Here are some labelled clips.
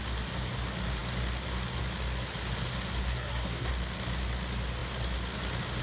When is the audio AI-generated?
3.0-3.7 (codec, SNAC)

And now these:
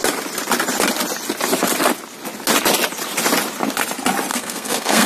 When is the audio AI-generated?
4.3-5.1 (codec, SNAC)

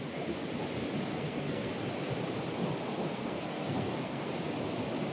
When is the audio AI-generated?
1.1-1.7 (codec, SNAC); 3.1-4.3

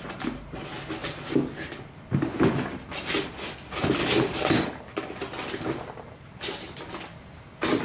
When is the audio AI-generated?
none

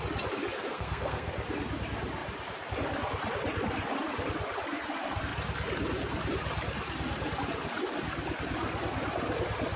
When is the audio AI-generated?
0.7-1.3 (codec, SNAC)

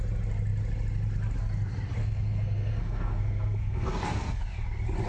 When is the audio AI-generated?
2.0-4.4 (codec, SNAC)

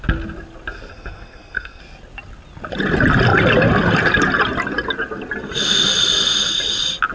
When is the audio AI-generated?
0.9-1.8 (codec, SNAC)

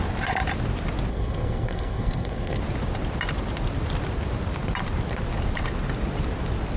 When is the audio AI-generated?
1.1-2.6 (codec, SNAC)